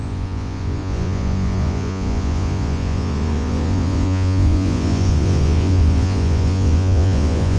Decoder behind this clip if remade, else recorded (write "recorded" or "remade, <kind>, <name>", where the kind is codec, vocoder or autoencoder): remade, vocoder, Vocos